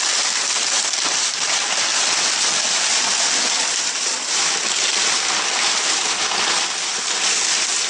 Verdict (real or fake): real